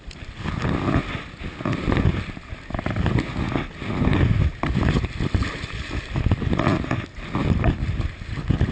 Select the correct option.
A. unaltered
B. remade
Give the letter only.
A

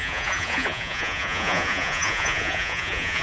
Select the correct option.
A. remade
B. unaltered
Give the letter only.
A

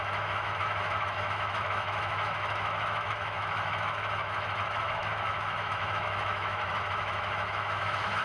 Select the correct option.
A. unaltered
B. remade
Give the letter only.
B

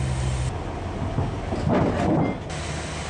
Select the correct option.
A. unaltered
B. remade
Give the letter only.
A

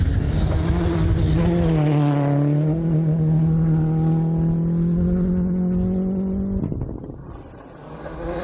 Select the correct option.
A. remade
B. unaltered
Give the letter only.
B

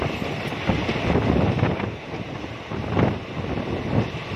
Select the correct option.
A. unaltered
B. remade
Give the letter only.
A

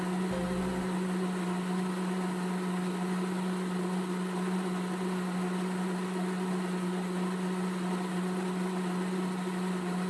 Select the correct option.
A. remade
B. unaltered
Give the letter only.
B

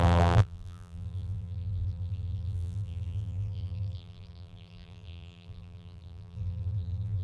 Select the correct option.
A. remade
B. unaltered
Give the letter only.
A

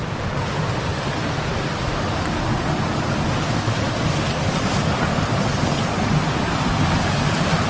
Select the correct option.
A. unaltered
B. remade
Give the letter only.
A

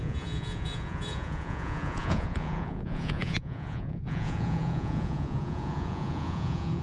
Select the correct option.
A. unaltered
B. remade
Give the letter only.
B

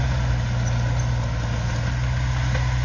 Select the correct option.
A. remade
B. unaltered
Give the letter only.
B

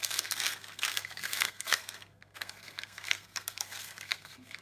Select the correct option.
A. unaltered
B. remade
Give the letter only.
B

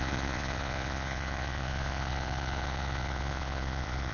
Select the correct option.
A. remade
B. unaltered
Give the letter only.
A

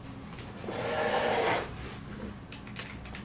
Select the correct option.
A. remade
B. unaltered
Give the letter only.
B